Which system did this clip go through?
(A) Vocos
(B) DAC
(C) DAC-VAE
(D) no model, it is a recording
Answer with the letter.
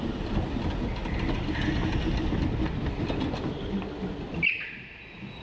D